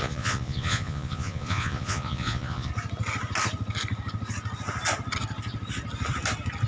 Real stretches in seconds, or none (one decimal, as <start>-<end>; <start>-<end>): 2.7-6.7

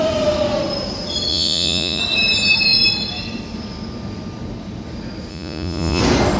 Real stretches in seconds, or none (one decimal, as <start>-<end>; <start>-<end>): 0.0-1.3; 2.0-5.3; 6.0-6.4

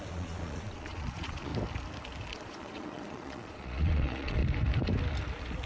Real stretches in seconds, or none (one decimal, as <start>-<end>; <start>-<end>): 1.5-2.3; 4.4-5.7